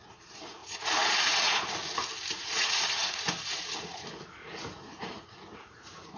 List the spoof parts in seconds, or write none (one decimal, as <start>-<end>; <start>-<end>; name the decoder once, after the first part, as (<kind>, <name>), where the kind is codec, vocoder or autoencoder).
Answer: 0.0-1.8 (vocoder, Vocos); 2.3-6.2